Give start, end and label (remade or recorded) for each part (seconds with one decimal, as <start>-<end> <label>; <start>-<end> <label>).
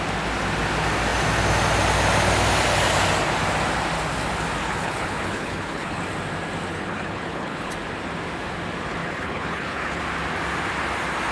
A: 0.0-4.6 recorded; 4.6-6.0 remade; 6.0-6.7 recorded; 6.7-7.7 remade; 7.7-9.0 recorded; 9.0-10.0 remade; 10.0-11.3 recorded